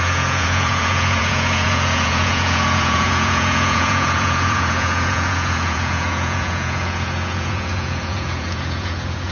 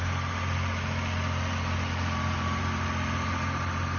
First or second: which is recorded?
second